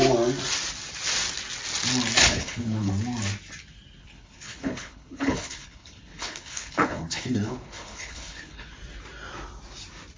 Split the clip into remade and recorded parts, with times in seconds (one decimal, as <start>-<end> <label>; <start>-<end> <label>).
0.0-2.2 recorded; 2.2-2.9 remade; 2.9-4.0 recorded; 4.0-8.7 remade; 8.7-10.2 recorded